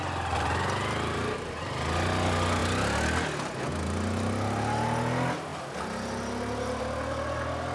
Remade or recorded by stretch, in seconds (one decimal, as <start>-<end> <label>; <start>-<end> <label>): 0.0-7.7 recorded